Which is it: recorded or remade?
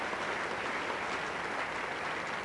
recorded